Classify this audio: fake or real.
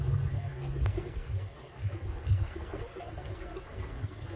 fake